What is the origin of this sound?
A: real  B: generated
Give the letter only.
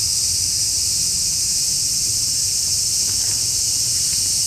A